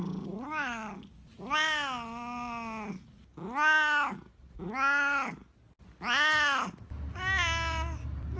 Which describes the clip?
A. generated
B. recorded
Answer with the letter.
B